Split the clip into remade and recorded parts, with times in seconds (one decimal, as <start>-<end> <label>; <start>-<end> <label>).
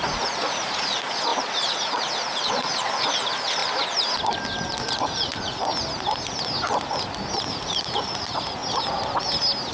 0.0-3.6 remade; 3.6-4.8 recorded; 4.8-5.6 remade; 5.6-7.5 recorded; 7.5-8.6 remade; 8.6-9.7 recorded